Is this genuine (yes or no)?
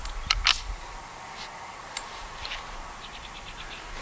yes